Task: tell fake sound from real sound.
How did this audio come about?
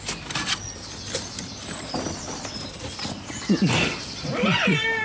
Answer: real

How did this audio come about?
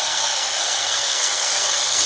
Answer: fake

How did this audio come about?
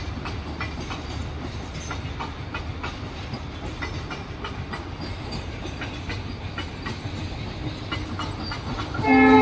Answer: real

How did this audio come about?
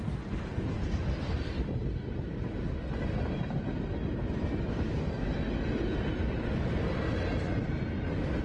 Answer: real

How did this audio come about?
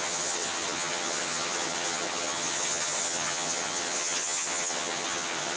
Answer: fake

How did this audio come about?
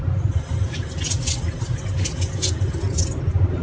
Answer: real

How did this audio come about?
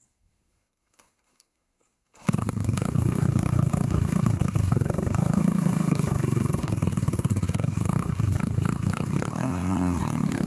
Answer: fake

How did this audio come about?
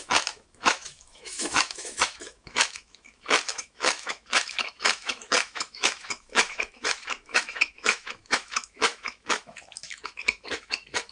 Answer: fake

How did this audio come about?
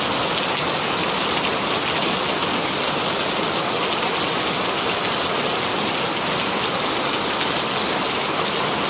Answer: real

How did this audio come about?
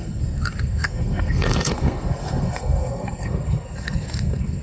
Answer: fake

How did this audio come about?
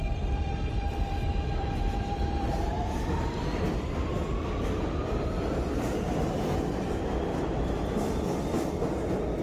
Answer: fake